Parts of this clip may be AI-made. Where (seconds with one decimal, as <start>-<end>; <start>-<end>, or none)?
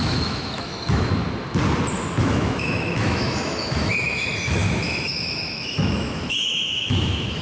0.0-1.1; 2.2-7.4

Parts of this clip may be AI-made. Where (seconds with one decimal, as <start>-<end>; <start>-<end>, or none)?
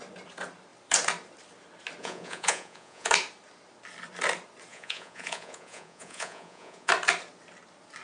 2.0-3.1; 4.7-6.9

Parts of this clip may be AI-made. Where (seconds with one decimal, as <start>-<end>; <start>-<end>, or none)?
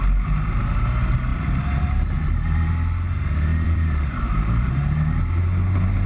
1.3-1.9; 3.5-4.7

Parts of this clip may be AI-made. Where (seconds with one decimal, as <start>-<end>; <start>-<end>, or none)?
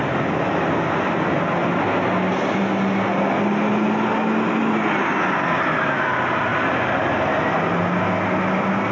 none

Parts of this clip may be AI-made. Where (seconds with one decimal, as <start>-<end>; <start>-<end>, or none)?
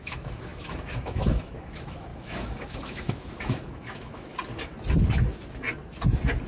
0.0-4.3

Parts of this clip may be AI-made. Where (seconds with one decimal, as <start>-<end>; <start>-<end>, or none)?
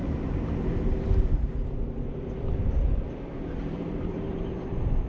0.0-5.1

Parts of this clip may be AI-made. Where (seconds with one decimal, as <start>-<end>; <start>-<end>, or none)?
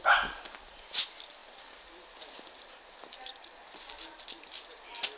none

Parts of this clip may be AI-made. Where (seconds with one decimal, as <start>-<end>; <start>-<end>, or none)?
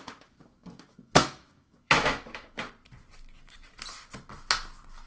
0.0-2.7